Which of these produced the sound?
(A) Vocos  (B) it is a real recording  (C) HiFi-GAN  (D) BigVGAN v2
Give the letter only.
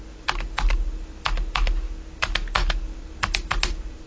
B